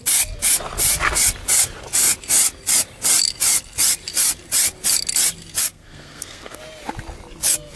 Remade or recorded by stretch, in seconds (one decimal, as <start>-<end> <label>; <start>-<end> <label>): 0.0-5.6 recorded; 5.6-6.6 remade; 6.6-7.8 recorded

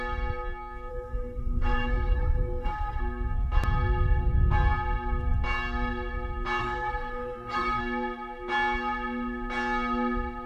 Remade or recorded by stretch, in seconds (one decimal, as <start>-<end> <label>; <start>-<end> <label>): 0.0-0.9 recorded; 0.9-3.0 remade; 3.0-6.6 recorded; 6.6-7.8 remade; 7.8-10.5 recorded